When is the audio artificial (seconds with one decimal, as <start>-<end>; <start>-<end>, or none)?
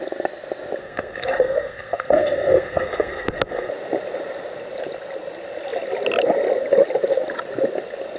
0.8-3.7